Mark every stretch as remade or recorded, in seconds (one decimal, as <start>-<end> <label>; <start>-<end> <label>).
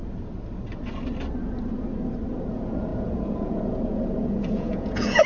0.0-2.5 recorded; 2.5-5.3 remade